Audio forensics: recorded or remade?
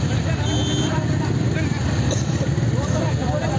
recorded